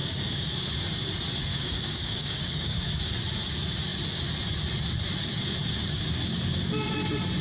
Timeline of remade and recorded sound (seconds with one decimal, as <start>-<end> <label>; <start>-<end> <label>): 0.0-0.6 remade; 0.6-1.5 recorded; 1.5-2.9 remade; 2.9-7.4 recorded